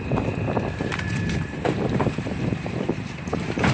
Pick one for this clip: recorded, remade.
remade